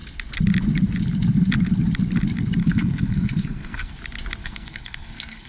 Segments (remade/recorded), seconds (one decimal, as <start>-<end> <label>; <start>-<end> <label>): 0.0-2.6 recorded; 2.6-4.0 remade; 4.0-4.4 recorded; 4.4-5.5 remade